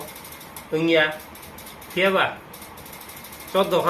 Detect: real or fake real